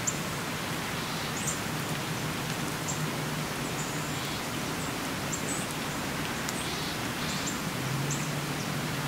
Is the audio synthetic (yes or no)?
no